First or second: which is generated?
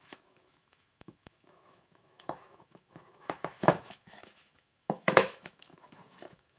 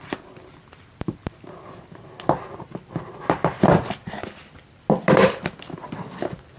first